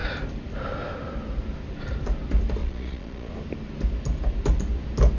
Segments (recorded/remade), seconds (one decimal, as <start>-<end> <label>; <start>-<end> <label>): 0.0-2.6 recorded; 2.6-3.3 remade; 3.3-5.2 recorded

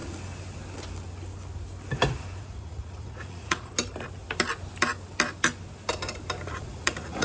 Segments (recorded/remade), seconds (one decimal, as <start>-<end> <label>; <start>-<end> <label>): 0.0-2.4 recorded; 2.4-3.7 remade; 3.7-6.5 recorded; 6.5-7.2 remade

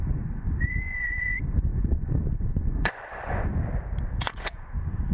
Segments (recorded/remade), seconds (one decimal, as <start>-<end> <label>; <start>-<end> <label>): 0.0-3.5 remade; 3.5-4.2 recorded; 4.2-5.1 remade